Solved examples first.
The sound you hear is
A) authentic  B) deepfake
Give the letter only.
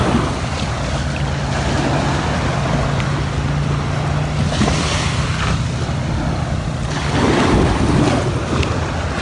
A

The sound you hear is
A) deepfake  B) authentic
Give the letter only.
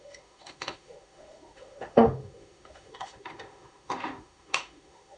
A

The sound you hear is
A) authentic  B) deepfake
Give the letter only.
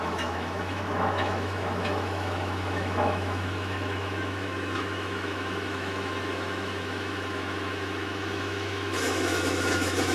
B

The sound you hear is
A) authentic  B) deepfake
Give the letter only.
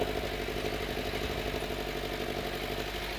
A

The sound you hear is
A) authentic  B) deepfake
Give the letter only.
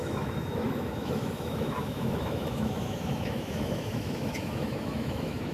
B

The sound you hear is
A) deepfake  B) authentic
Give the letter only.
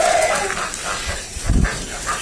B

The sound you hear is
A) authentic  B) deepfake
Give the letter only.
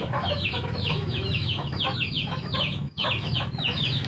B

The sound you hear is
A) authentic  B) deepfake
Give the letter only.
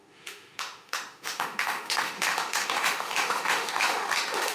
B